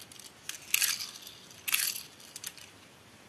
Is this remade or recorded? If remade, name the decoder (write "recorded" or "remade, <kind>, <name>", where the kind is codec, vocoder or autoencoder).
recorded